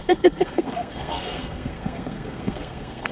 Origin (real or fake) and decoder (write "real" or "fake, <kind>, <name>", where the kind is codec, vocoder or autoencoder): fake, codec, SNAC